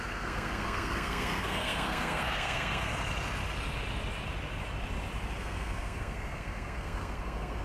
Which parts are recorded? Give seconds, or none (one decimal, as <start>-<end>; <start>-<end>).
2.9-5.4